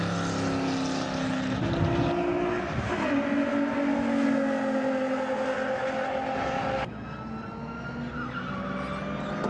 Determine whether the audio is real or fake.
real